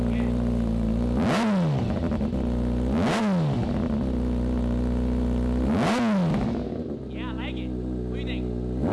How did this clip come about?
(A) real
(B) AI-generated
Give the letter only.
A